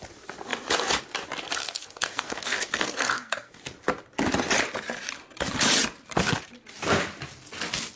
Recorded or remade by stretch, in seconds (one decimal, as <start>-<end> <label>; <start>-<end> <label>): 0.0-1.6 recorded; 1.6-3.6 remade; 3.6-8.0 recorded